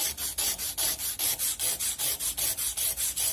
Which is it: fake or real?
real